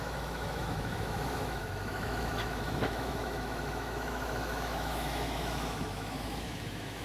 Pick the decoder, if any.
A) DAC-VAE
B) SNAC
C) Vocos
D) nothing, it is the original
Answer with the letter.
A